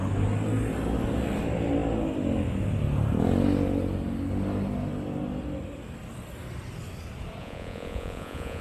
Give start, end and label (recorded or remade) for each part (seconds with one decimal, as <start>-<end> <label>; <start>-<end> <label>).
0.0-7.4 recorded; 7.4-8.6 remade